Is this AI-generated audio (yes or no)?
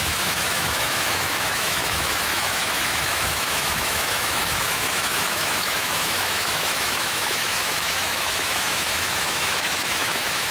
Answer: yes